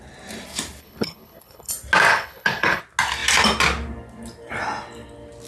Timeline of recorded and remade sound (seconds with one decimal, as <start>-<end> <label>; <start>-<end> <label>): 0.0-0.8 recorded; 0.8-1.7 remade; 1.7-2.1 recorded; 2.1-2.8 remade; 2.8-5.5 recorded